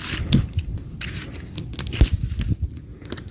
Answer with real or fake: real